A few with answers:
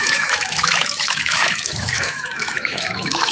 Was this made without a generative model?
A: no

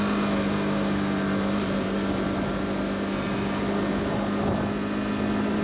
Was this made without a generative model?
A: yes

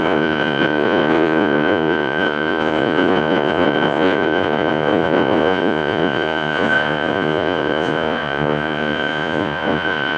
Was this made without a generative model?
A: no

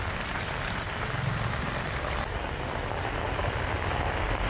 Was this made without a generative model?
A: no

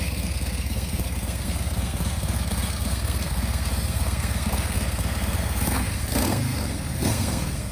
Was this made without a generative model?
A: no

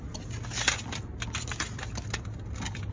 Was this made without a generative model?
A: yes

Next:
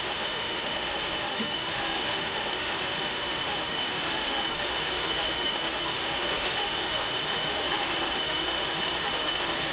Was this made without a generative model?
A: no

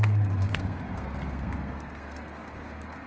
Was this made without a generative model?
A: no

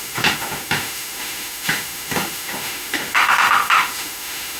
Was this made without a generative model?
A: no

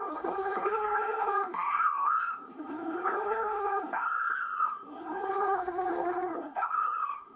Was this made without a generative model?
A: no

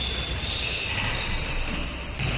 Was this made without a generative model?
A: yes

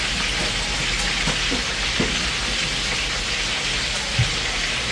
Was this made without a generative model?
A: yes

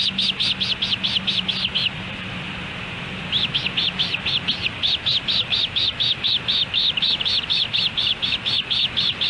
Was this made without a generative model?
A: yes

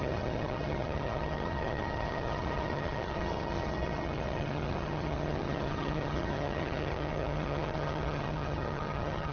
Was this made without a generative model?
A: no